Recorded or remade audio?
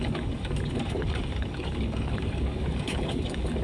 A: remade